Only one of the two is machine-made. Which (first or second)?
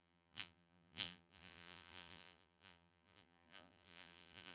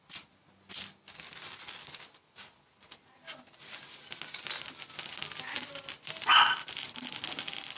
first